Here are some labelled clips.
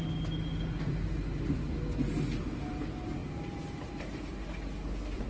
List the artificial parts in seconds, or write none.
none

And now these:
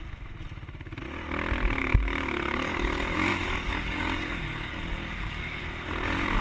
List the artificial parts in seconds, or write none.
1.8-5.6 (codec, DAC)